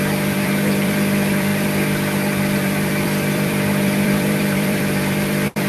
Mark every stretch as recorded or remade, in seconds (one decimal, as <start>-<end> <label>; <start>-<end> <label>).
0.0-5.7 remade